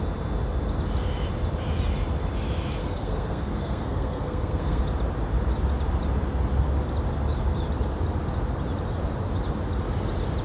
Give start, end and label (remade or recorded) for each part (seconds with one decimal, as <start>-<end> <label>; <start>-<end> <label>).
0.0-2.8 recorded; 2.8-4.8 remade; 4.8-10.4 recorded